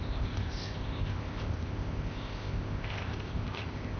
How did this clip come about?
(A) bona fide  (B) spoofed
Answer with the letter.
B